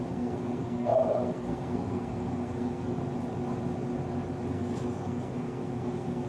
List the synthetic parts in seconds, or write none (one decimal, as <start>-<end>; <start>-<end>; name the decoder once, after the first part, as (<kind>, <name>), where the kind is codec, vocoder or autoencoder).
0.0-3.0 (codec, SNAC); 4.5-6.3

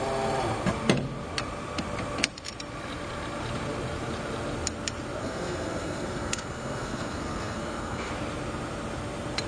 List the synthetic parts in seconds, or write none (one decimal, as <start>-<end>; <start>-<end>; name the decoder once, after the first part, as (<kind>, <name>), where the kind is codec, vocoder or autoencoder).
5.2-8.1 (codec, SNAC)

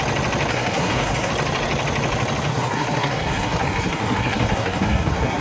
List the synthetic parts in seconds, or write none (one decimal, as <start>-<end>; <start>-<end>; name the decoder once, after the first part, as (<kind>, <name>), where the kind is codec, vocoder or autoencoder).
0.5-1.3 (codec, SNAC); 2.5-5.4

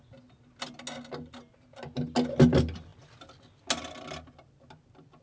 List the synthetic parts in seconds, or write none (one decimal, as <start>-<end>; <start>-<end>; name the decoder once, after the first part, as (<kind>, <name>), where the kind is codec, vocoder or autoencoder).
none

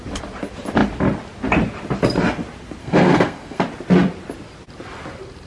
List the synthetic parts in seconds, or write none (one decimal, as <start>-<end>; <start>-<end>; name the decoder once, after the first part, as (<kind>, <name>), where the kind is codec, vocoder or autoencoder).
2.8-3.6 (codec, SNAC)